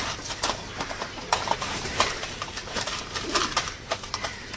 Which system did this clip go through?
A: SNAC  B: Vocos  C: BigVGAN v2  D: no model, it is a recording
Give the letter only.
C